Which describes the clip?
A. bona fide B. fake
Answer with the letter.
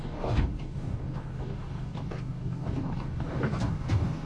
B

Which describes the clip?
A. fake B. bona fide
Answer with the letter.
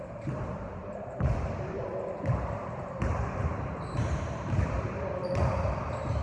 A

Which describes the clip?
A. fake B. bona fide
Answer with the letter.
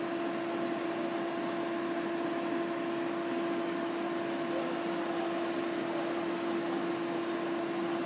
B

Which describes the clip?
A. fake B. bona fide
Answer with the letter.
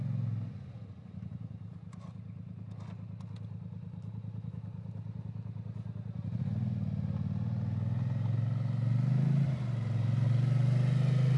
B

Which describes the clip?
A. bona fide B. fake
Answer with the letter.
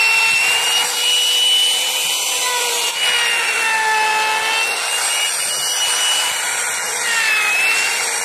A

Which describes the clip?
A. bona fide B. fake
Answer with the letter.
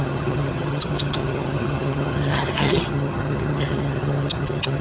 B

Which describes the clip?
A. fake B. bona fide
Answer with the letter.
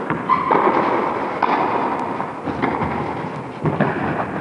B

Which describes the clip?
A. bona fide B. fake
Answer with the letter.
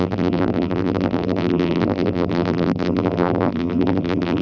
B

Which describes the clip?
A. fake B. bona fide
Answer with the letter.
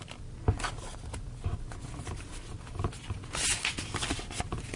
B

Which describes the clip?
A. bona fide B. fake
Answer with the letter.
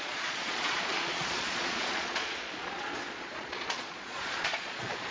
B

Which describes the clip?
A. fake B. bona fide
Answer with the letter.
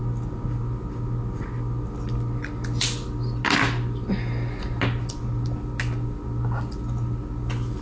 B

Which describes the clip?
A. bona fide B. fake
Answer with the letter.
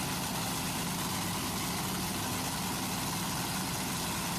A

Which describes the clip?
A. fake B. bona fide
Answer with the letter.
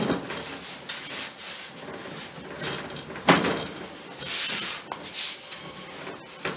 B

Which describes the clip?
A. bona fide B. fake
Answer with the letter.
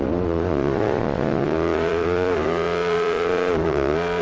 B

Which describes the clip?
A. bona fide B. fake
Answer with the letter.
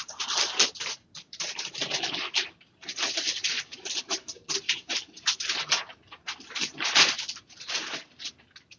B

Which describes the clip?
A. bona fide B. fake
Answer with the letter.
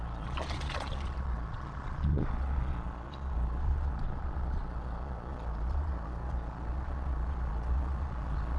B